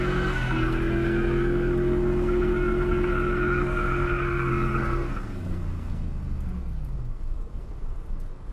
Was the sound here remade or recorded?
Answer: remade